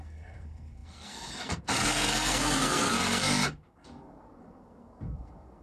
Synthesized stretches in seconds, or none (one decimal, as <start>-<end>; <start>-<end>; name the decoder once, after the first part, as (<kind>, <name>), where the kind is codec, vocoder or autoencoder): 0.0-5.6 (codec, SNAC)